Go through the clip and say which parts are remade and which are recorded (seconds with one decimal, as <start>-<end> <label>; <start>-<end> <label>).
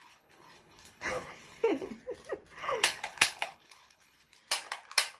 0.0-1.9 remade; 1.9-2.6 recorded; 2.6-4.4 remade; 4.4-5.2 recorded